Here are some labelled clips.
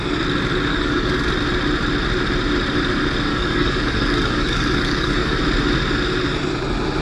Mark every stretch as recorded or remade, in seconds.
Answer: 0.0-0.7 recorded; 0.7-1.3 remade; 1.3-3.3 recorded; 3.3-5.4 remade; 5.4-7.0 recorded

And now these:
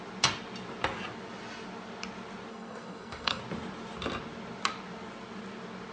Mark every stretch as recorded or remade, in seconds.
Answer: 0.0-2.5 recorded; 2.5-3.4 remade; 3.4-5.9 recorded

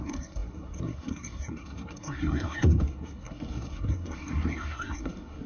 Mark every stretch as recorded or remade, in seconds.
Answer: 0.0-5.5 remade

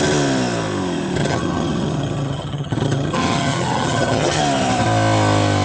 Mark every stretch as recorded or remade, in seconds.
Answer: 0.0-1.2 recorded; 1.2-4.4 remade; 4.4-5.6 recorded

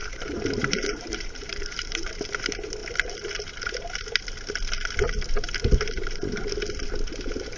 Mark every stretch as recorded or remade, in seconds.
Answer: 0.0-2.1 remade; 2.1-7.6 recorded